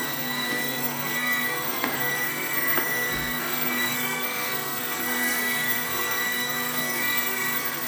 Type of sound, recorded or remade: remade